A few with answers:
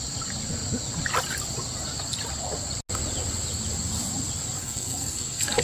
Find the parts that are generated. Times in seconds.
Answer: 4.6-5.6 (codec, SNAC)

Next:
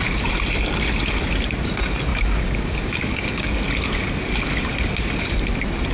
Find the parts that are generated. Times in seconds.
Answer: 2.1-3.6 (codec, DAC)

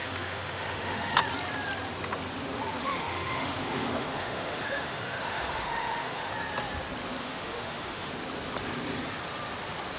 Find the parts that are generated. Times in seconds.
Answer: 0.0-1.2 (autoencoder, DAC-VAE); 2.8-6.3; 7.2-8.1

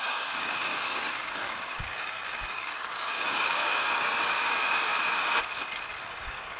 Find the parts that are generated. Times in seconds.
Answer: 0.0-4.9 (codec, DAC); 6.1-6.6

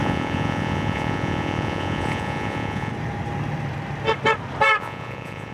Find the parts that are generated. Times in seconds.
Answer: 0.0-2.9 (vocoder, Vocos); 4.8-5.5

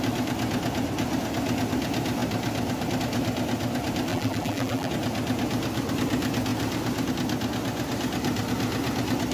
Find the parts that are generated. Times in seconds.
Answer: 4.1-4.9 (vocoder, BigVGAN v2)

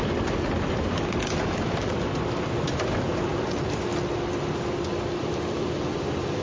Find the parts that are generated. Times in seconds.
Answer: none